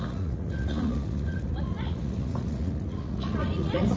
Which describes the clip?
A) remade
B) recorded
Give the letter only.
A